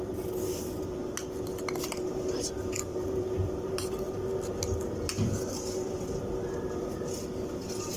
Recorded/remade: recorded